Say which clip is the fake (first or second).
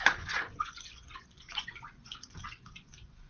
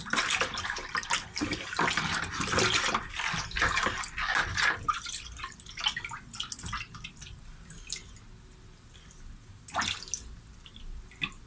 first